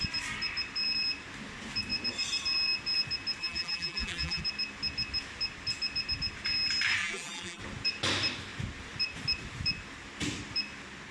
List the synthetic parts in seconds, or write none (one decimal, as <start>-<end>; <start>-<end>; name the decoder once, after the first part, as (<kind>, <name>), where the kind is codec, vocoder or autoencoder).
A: 3.4-4.4 (vocoder, BigVGAN v2); 7.0-7.6